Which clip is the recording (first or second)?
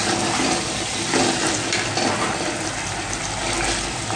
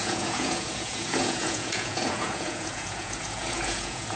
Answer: first